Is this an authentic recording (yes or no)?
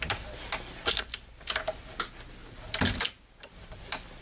yes